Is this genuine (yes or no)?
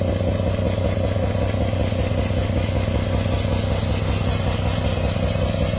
yes